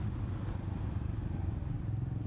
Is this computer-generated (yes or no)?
no